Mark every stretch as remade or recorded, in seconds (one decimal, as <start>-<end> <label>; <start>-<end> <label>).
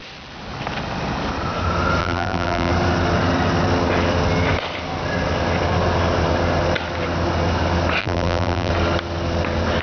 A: 0.0-2.0 recorded; 2.0-2.7 remade; 2.7-8.0 recorded; 8.0-8.7 remade; 8.7-9.8 recorded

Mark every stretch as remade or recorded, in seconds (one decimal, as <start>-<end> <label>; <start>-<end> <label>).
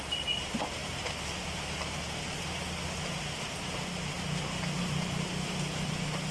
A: 0.0-6.3 recorded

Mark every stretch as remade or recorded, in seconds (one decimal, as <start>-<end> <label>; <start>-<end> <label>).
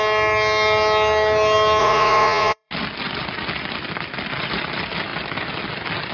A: 0.0-1.8 recorded; 1.8-2.7 remade; 2.7-6.1 recorded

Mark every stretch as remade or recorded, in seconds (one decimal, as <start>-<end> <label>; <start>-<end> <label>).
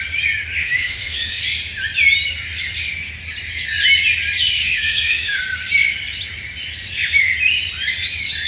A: 0.0-0.6 recorded; 0.6-1.4 remade; 1.4-4.6 recorded; 4.6-5.4 remade; 5.4-8.5 recorded